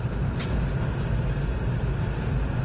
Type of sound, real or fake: real